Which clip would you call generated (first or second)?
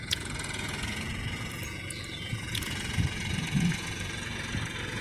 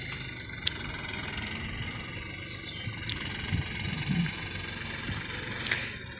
first